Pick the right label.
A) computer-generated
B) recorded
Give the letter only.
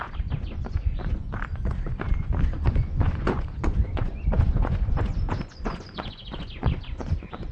A